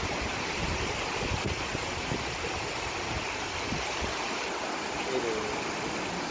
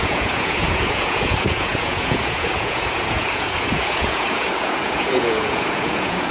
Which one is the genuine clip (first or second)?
first